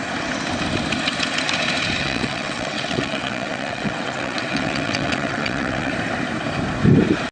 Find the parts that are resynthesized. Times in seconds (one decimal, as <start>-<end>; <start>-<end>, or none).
2.0-5.9